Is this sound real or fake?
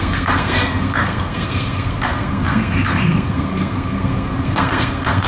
fake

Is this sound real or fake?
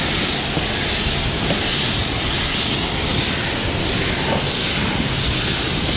real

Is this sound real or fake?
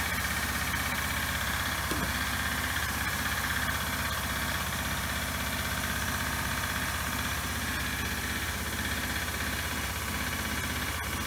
real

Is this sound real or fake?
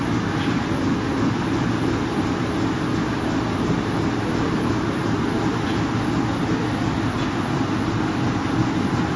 real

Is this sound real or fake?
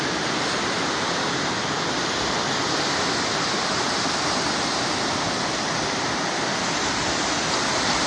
real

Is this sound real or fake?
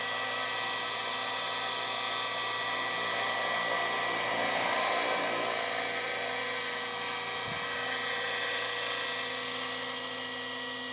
real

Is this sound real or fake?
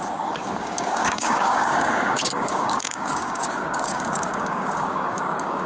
fake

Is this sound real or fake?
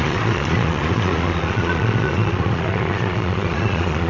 fake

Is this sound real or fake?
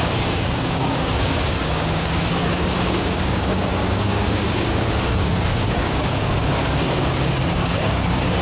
fake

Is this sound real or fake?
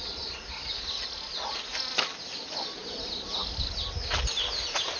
real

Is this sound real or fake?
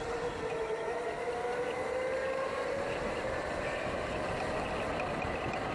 real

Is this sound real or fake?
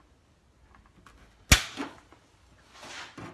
real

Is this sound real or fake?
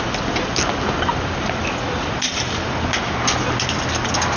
real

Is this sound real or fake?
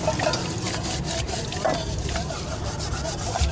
real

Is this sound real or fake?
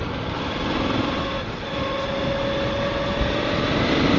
real